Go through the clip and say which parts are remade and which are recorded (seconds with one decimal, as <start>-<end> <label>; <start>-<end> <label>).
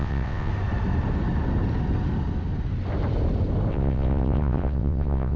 0.0-0.5 remade; 0.5-3.7 recorded; 3.7-5.4 remade